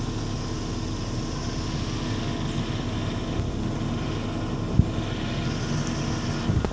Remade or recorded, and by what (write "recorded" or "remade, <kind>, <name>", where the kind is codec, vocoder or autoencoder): recorded